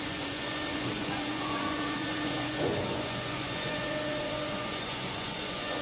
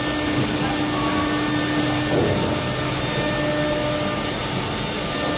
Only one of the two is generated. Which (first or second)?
first